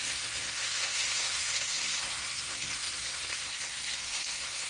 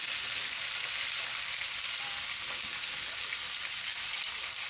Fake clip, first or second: first